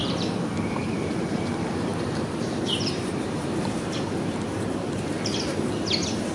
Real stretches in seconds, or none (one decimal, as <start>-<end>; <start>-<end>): 1.4-1.9; 5.7-6.3